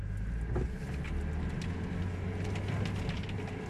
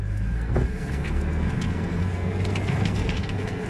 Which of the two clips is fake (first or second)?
second